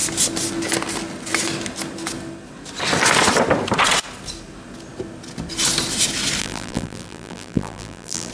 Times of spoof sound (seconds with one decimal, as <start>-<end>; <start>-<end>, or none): 6.4-8.3

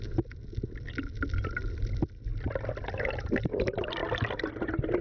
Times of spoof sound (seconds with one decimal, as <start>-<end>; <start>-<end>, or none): none

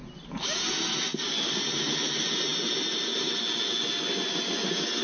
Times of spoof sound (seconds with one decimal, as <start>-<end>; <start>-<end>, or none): none